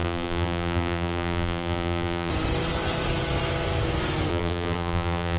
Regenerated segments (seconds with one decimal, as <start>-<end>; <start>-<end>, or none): 0.0-2.3; 4.3-5.4